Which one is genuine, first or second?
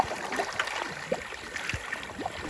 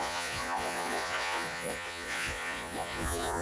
first